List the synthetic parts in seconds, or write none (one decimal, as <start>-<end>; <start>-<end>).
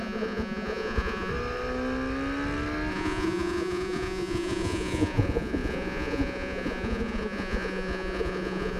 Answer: 0.0-1.3; 2.9-8.8